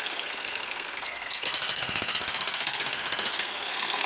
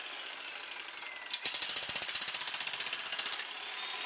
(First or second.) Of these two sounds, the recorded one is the second